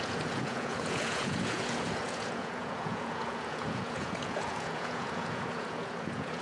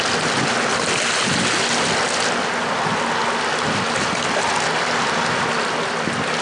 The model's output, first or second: first